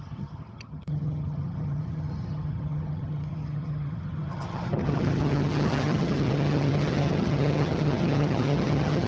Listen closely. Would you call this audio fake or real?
fake